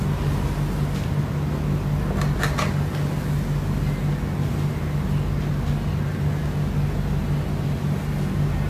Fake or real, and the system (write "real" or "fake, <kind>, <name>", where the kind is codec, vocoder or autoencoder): real